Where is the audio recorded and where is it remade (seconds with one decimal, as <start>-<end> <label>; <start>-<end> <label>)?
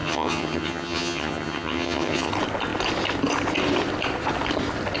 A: 0.0-2.3 remade; 2.3-5.0 recorded